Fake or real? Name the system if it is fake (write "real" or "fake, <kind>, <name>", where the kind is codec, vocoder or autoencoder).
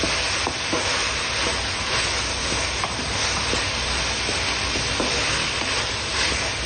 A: real